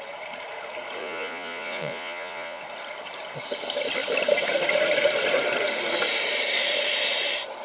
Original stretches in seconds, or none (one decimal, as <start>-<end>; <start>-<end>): 0.0-1.0; 2.6-7.6